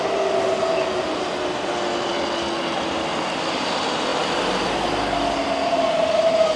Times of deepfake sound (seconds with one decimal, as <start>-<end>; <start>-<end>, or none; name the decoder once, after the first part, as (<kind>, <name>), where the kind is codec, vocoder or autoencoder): none